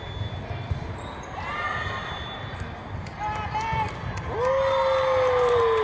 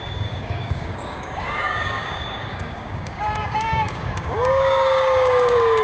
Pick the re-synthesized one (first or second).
second